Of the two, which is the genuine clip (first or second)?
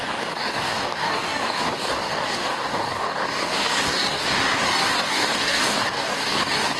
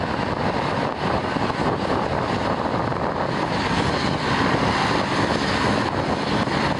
second